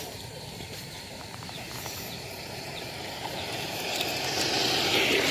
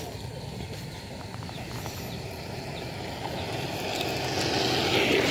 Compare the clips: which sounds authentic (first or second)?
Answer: second